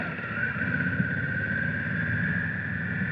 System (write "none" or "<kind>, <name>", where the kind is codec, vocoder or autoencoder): none